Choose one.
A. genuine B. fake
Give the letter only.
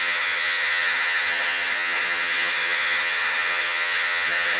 B